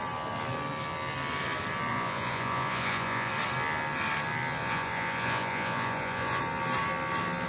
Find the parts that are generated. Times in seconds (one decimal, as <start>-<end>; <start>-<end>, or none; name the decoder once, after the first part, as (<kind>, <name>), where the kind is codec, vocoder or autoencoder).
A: 1.9-3.3 (vocoder, Vocos); 4.6-6.4